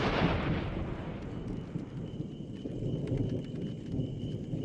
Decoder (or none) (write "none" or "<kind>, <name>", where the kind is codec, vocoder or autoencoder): none